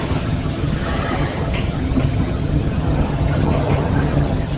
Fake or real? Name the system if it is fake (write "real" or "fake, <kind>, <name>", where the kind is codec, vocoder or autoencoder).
fake, vocoder, HiFi-GAN